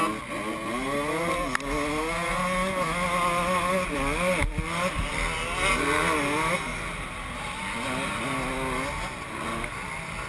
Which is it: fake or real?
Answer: real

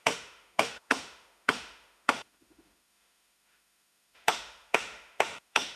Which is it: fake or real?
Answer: fake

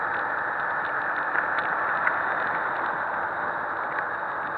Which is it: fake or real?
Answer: real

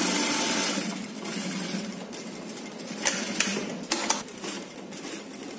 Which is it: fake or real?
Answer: real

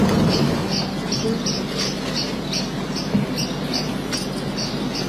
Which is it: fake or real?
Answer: real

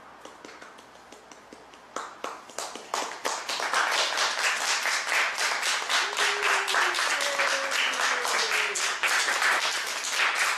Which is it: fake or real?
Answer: real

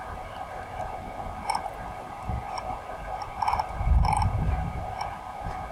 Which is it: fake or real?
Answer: real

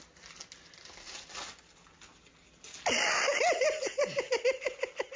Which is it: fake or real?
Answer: real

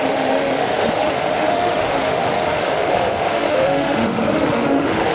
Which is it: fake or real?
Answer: fake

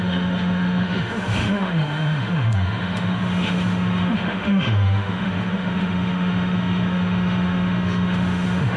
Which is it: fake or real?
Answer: fake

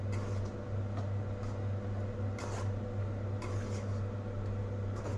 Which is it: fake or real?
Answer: real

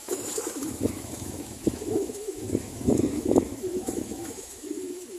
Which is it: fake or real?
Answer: fake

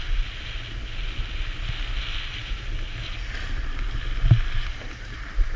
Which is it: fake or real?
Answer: real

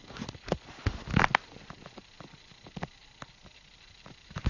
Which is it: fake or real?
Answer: real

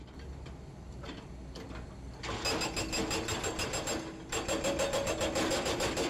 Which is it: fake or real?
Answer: real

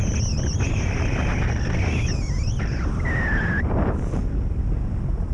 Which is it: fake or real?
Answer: real